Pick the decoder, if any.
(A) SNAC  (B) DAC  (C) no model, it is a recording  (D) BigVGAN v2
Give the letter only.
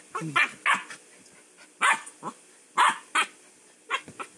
C